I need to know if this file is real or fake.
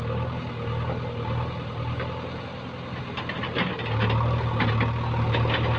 real